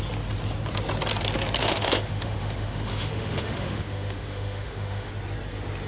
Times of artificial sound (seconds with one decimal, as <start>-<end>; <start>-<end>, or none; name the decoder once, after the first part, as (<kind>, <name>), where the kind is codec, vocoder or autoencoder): 1.6-5.1 (autoencoder, DAC-VAE)